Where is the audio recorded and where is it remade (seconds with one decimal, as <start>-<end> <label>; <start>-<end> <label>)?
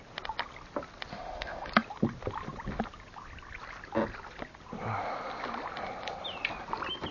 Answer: 0.0-1.1 recorded; 1.1-1.7 remade; 1.7-7.1 recorded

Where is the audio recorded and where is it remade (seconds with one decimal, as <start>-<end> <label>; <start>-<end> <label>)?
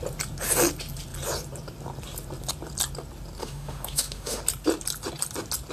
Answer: 0.0-3.4 recorded; 3.4-4.4 remade; 4.4-5.7 recorded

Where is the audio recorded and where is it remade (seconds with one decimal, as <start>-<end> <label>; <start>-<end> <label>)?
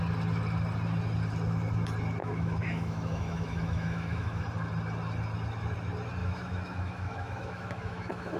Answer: 0.0-2.2 recorded; 2.2-4.4 remade; 4.4-6.2 recorded; 6.2-8.4 remade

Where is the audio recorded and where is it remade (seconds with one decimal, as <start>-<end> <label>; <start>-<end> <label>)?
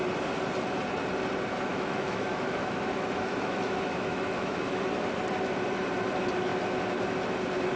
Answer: 0.0-1.7 recorded; 1.7-4.8 remade; 4.8-7.8 recorded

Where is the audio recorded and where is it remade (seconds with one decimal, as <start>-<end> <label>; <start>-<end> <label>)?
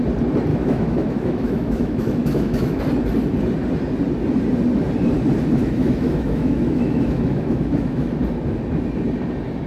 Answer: 0.0-0.5 recorded; 0.5-2.8 remade; 2.8-5.6 recorded; 5.6-8.2 remade; 8.2-9.7 recorded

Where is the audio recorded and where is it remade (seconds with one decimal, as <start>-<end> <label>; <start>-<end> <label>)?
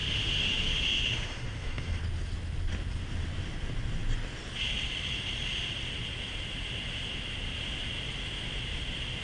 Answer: 0.0-2.0 remade; 2.0-9.2 recorded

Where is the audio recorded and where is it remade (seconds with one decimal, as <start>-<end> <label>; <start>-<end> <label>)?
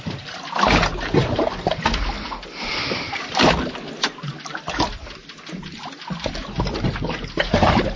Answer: 0.0-8.0 recorded